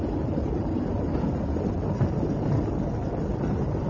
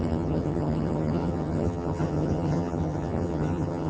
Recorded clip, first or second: first